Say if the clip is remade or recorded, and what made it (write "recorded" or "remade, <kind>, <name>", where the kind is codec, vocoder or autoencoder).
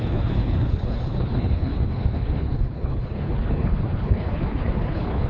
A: remade, codec, HILCodec